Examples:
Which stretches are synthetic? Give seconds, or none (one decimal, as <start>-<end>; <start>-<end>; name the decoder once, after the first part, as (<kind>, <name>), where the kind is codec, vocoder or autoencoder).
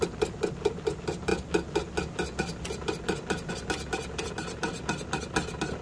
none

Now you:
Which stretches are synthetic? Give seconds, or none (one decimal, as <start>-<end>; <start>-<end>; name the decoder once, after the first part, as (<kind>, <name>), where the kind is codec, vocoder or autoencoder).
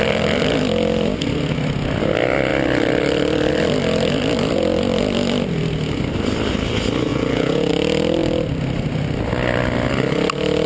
7.1-7.7 (vocoder, Vocos)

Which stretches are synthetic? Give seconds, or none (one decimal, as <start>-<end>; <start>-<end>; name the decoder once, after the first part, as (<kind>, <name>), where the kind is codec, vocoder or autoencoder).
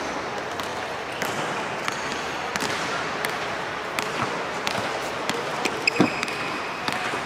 none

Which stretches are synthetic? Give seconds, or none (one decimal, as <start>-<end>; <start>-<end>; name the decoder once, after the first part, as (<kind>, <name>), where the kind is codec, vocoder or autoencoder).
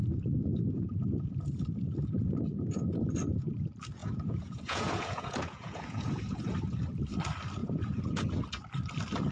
4.0-6.5 (vocoder, Vocos); 7.6-8.3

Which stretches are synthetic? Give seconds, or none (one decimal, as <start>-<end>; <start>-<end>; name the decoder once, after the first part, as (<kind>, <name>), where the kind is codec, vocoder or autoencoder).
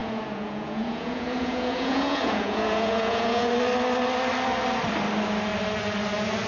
0.0-3.5 (vocoder, Vocos)